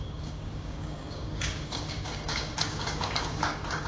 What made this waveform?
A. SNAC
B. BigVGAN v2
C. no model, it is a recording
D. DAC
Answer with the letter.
D